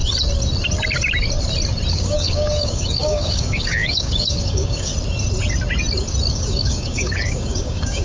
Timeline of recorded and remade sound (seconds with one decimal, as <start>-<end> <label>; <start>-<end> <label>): 0.0-1.9 recorded; 1.9-4.9 remade; 4.9-6.3 recorded; 6.3-8.0 remade